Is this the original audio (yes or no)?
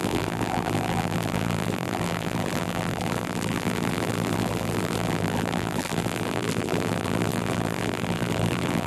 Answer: no